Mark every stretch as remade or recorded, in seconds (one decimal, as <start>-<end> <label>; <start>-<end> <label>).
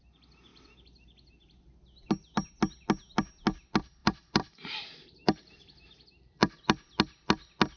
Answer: 0.0-4.0 recorded; 4.0-6.6 remade; 6.6-7.8 recorded